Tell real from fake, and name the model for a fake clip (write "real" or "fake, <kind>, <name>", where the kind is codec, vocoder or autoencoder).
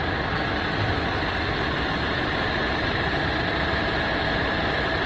real